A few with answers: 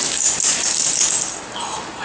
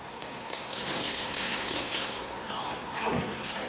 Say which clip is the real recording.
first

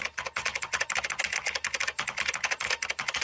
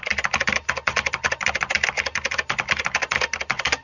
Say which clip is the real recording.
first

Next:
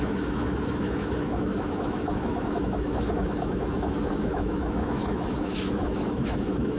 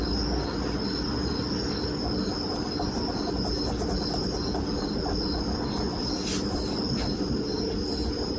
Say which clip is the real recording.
second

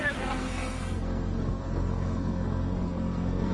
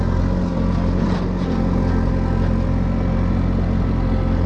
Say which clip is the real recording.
second